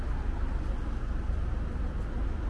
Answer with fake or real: real